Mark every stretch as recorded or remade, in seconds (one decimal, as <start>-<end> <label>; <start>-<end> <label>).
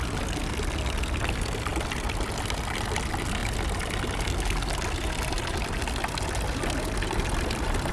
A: 0.0-1.7 recorded; 1.7-2.3 remade; 2.3-7.9 recorded